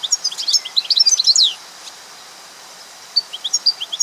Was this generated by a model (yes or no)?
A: no